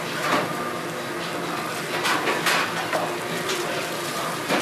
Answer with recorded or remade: recorded